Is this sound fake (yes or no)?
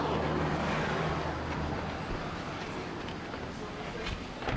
no